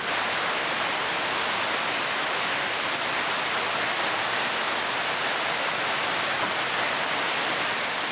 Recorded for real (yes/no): yes